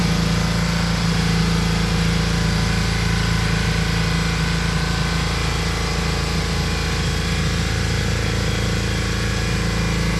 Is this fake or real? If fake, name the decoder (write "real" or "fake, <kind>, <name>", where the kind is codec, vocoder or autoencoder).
real